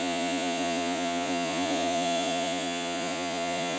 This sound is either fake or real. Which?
fake